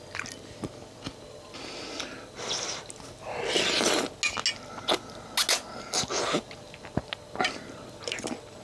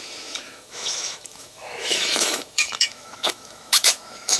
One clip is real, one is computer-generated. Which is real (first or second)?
first